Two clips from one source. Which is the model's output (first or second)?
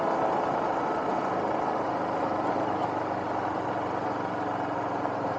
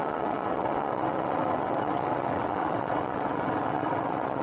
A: second